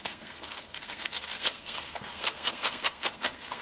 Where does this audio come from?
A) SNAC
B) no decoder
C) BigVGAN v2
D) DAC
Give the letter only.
A